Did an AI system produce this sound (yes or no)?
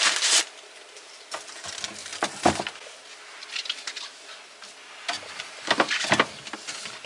no